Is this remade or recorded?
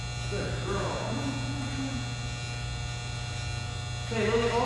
recorded